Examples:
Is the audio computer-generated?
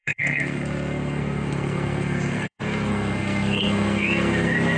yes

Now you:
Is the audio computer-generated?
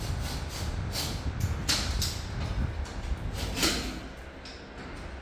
no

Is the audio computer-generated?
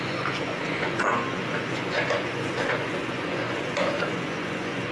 yes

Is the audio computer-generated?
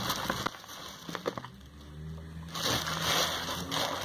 no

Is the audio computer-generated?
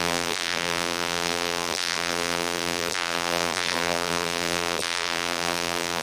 yes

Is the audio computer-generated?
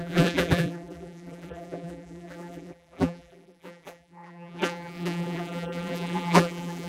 yes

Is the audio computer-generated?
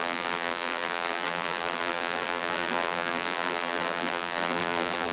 yes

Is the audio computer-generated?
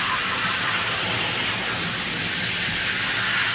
no